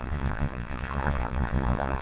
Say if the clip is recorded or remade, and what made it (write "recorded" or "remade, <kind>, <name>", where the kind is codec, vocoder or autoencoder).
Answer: remade, vocoder, Vocos